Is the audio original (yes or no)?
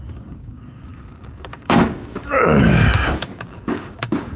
no